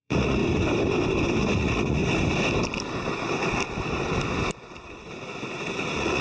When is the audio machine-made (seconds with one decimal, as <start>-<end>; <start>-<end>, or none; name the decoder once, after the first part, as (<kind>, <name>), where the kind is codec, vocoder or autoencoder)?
0.0-0.4 (vocoder, Vocos); 1.4-2.0; 5.7-6.2